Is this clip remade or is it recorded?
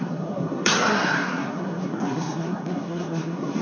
remade